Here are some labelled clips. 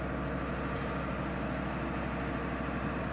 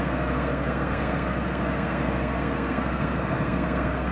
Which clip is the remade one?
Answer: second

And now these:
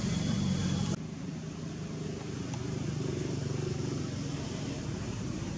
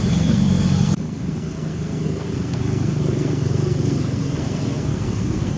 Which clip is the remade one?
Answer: second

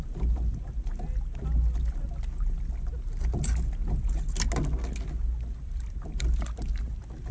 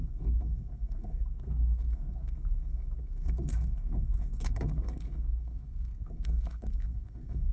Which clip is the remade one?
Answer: second